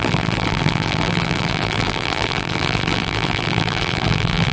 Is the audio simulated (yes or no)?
yes